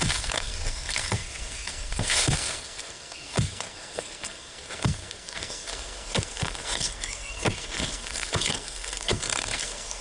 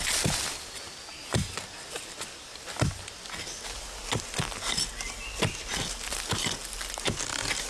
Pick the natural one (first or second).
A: second